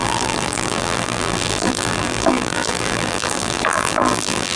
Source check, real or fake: fake